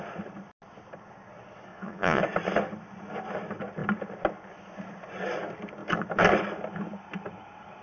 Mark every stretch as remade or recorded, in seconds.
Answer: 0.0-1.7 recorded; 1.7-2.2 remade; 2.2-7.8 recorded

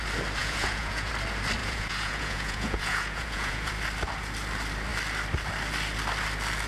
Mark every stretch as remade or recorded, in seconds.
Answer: 0.0-0.4 recorded; 0.4-1.1 remade; 1.1-1.6 recorded; 1.6-3.7 remade; 3.7-6.7 recorded

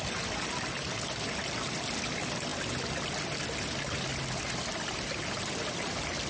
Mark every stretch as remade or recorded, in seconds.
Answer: 0.0-6.3 recorded

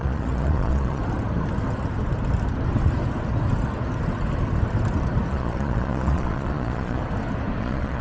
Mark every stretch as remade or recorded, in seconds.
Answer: 0.0-1.0 remade; 1.0-5.3 recorded; 5.3-7.0 remade; 7.0-7.6 recorded; 7.6-8.0 remade

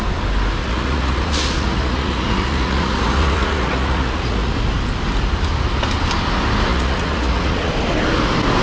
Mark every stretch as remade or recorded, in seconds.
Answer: 0.0-0.6 recorded; 0.6-4.5 remade; 4.5-6.7 recorded; 6.7-7.7 remade; 7.7-8.6 recorded

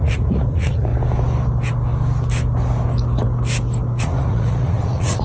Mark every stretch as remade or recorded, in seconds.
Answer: 0.0-0.9 remade; 0.9-4.0 recorded; 4.0-5.2 remade

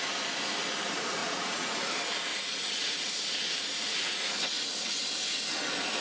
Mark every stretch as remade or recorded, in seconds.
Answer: 0.0-1.2 recorded; 1.2-1.9 remade; 1.9-2.3 recorded; 2.3-3.1 remade; 3.1-3.7 recorded; 3.7-4.7 remade; 4.7-6.0 recorded

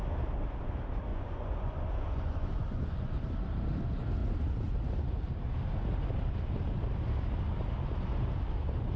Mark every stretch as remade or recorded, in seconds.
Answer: 0.0-1.1 recorded; 1.1-3.1 remade; 3.1-9.0 recorded